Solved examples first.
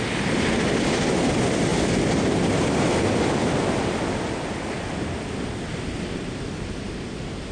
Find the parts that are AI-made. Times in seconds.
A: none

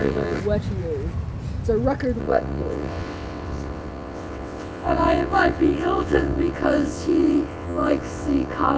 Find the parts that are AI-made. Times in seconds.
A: 0.0-0.4 (vocoder, WaveNeXt); 2.2-8.8

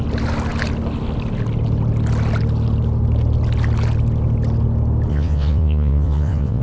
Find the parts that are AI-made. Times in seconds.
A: 5.1-6.6 (vocoder, WaveNeXt)

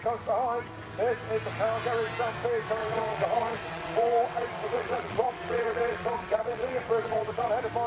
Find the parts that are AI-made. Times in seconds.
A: 2.8-7.5 (vocoder, WaveNeXt)

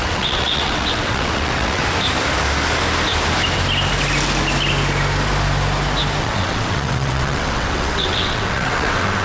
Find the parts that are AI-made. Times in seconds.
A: 0.0-1.8 (vocoder, WaveNeXt); 6.2-9.2